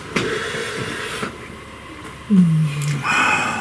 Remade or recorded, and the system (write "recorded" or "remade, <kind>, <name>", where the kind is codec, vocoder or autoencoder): recorded